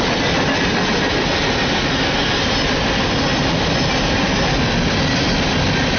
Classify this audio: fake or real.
real